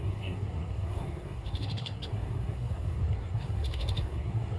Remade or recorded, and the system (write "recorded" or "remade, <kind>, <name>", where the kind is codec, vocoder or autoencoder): remade, codec, SNAC